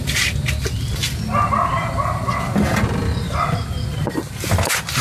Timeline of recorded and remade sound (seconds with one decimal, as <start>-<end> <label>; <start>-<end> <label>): 0.0-5.0 recorded